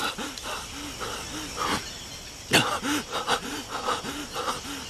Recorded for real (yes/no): yes